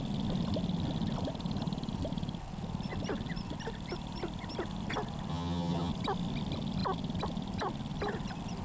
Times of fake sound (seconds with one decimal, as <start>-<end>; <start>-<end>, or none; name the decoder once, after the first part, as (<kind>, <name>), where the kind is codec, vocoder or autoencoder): 5.3-5.9 (vocoder, HiFi-GAN)